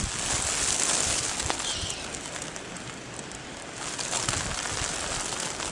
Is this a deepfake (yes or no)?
no